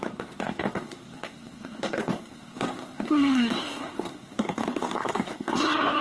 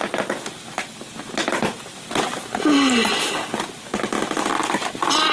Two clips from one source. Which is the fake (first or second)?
first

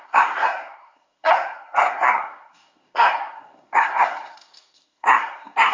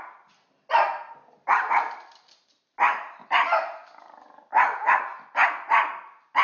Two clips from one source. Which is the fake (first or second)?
first